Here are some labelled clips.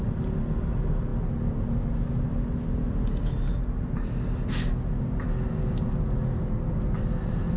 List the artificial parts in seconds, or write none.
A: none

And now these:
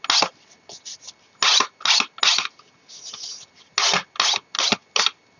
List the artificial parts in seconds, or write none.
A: none

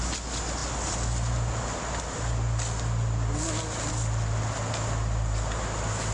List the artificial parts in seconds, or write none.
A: none

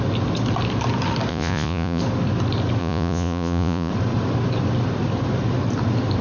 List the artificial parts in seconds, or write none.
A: 1.3-2.0 (vocoder, Vocos); 2.8-3.9

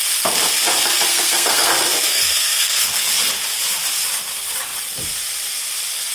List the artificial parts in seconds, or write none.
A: 1.1-1.7 (codec, SNAC); 2.1-3.1

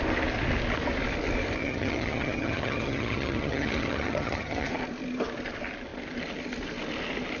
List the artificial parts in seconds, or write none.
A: 1.6-4.7 (vocoder, HiFi-GAN)

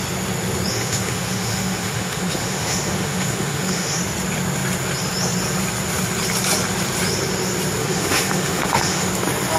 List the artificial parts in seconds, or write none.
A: 0.7-4.0 (autoencoder, DAC-VAE); 7.8-9.1